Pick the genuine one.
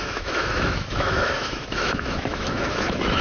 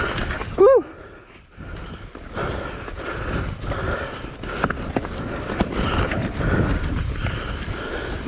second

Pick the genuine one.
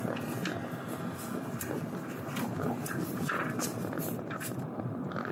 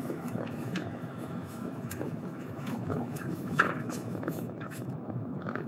first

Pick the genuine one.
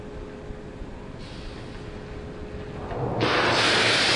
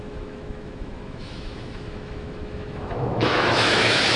first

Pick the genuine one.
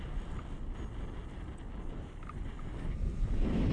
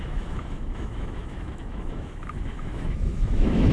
first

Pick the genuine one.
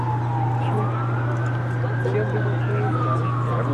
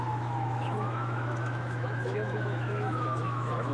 first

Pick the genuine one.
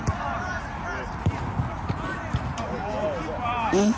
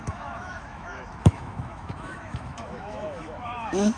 first